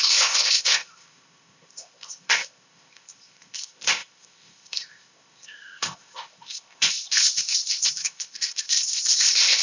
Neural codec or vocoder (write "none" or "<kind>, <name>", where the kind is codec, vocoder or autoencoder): codec, ZipCodec